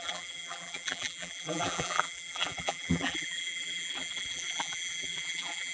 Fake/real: fake